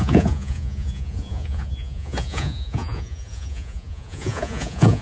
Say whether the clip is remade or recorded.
remade